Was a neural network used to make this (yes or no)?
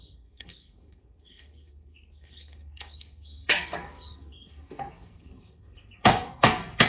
yes